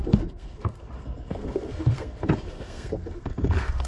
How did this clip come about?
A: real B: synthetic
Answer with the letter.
B